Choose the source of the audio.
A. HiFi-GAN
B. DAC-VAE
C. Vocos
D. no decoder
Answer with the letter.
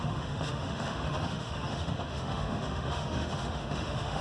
B